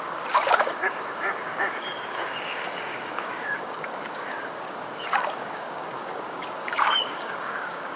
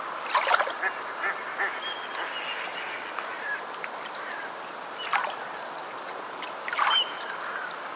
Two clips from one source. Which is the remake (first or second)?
first